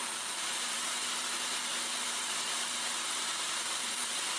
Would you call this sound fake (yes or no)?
yes